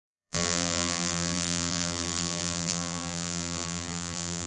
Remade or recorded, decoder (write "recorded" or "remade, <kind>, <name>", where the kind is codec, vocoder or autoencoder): remade, vocoder, BigVGAN v2